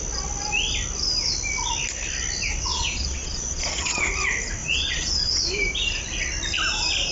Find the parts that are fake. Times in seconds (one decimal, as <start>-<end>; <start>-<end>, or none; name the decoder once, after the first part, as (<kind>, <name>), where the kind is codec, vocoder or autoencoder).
2.7-4.1 (vocoder, Vocos); 4.6-5.5